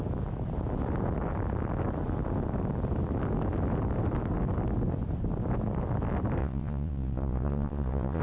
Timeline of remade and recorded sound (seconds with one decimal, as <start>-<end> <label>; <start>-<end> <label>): 0.0-6.4 recorded; 6.4-8.2 remade